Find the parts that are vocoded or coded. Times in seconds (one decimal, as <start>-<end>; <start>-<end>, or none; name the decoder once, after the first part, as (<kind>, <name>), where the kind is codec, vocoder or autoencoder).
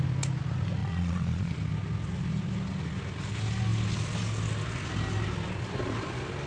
0.8-1.5 (vocoder, Vocos)